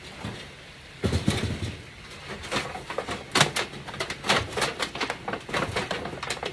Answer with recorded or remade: recorded